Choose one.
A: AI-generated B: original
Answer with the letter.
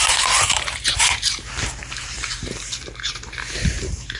A